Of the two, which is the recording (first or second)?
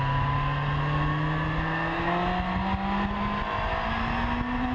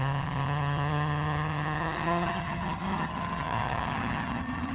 first